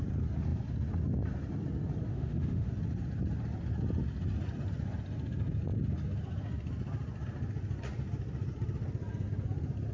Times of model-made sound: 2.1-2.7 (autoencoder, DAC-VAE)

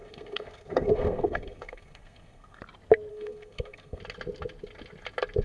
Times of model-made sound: 0.0-2.6 (codec, SNAC); 3.1-4.0

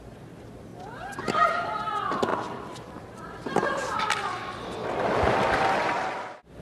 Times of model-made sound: 0.7-1.8 (vocoder, BigVGAN v2); 2.3-2.9